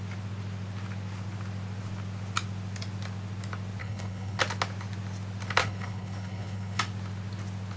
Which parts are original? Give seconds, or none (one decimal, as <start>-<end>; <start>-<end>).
0.0-3.8; 4.4-5.6; 6.8-7.8